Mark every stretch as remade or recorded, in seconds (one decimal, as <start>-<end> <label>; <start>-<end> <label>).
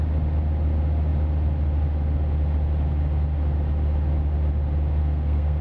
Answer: 0.0-5.0 recorded; 5.0-5.6 remade